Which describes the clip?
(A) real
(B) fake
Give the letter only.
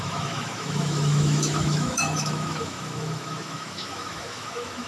B